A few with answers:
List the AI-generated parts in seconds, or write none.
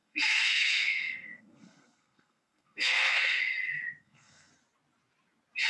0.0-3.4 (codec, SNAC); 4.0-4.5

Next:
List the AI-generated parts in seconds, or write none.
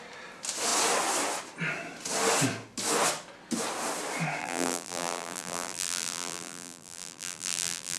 4.4-8.0 (vocoder, BigVGAN v2)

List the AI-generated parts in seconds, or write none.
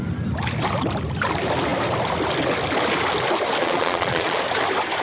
3.6-4.4 (vocoder, Vocos)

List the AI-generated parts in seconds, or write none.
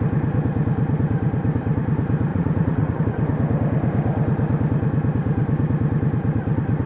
2.3-3.0 (vocoder, Vocos)